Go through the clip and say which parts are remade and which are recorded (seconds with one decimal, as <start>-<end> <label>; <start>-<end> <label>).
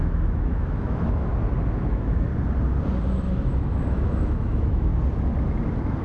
0.0-1.3 remade; 1.3-1.9 recorded; 1.9-2.3 remade; 2.3-3.0 recorded; 3.0-4.9 remade; 4.9-6.0 recorded